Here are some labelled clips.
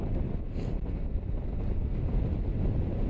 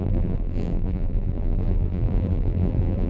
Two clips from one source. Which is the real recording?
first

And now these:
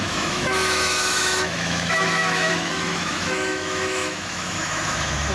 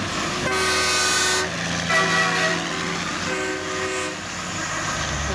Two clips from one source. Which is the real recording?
second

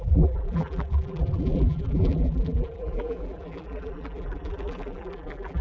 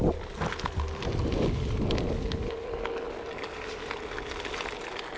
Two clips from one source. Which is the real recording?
second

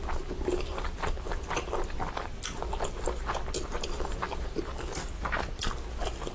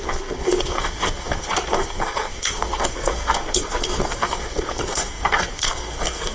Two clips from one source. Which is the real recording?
first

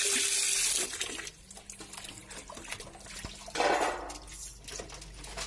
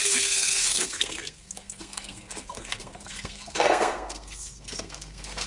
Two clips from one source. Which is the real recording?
first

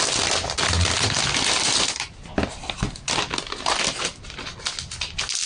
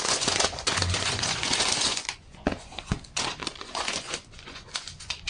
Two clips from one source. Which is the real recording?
first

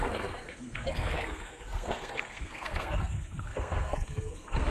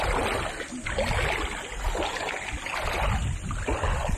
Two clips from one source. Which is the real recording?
second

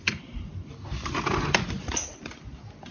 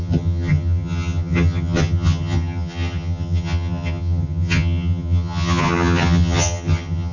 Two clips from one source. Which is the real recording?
first